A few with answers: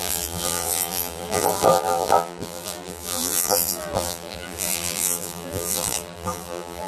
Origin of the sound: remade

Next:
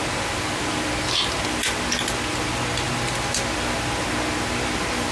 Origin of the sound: recorded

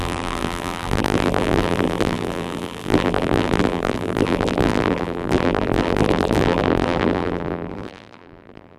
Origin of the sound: remade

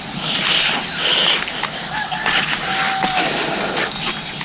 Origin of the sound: recorded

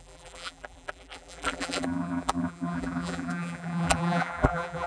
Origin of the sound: remade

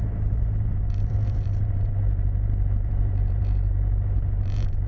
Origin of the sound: remade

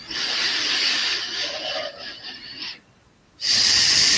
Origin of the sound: recorded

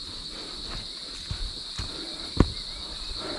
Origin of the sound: recorded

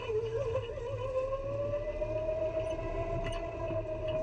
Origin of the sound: recorded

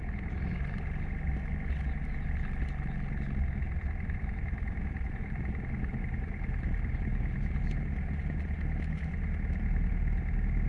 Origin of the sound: recorded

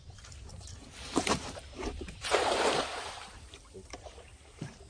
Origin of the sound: remade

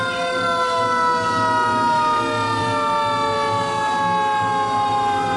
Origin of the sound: recorded